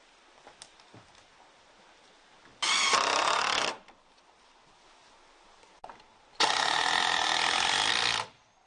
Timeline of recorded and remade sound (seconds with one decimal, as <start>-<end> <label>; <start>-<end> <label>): 0.0-8.7 recorded